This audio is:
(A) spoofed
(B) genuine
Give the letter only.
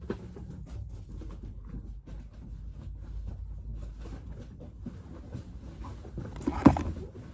B